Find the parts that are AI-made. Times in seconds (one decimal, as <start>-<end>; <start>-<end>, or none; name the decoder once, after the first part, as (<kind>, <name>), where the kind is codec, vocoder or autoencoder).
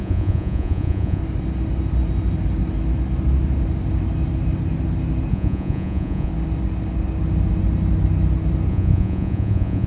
0.0-1.2 (vocoder, Vocos); 5.3-6.3; 8.7-9.9